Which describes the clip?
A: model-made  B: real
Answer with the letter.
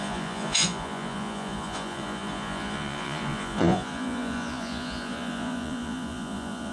A